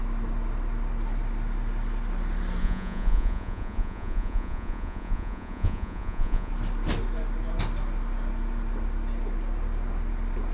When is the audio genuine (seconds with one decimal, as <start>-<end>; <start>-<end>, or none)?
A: 0.0-2.6; 6.5-10.5